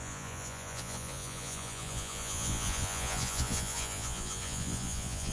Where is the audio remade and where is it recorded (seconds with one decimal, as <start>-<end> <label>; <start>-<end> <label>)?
0.0-5.3 remade